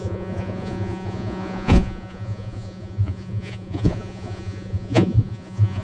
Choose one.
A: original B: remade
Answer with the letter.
B